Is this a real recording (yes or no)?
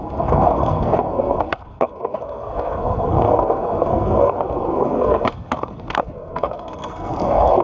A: no